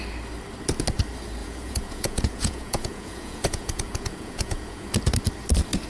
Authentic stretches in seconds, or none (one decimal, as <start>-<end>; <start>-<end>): 0.0-1.4; 4.9-5.9

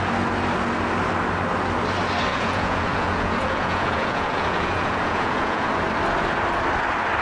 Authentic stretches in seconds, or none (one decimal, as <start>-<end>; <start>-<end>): 0.0-2.3; 5.7-7.2

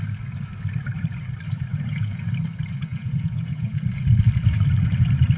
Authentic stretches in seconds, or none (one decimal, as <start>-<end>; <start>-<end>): 0.0-1.7; 2.2-2.9; 3.8-5.4

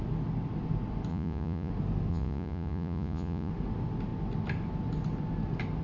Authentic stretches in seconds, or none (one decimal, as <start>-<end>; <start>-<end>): 0.0-1.1; 1.7-2.1; 3.5-5.8

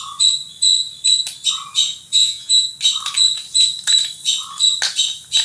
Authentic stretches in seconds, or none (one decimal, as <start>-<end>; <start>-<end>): 0.0-2.2; 2.7-5.4

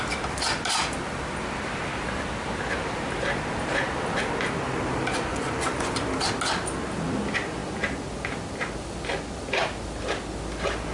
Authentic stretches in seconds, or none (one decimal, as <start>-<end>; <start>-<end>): 0.0-5.3; 5.9-10.9